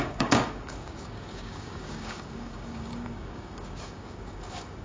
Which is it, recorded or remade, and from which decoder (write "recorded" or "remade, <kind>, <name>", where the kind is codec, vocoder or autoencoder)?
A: remade, codec, DAC